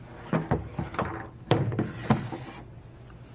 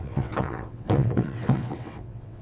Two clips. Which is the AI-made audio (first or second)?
second